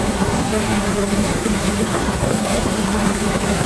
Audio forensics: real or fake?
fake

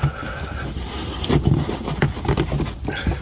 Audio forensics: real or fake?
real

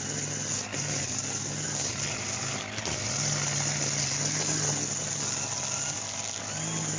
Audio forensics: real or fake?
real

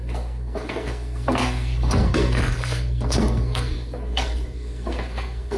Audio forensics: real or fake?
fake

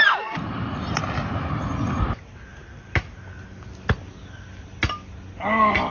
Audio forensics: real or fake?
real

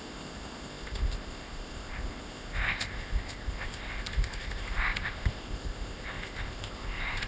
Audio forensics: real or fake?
fake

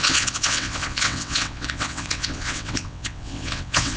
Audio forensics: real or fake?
fake